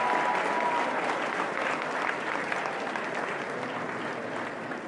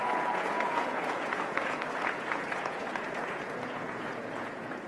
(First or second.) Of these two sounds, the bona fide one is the first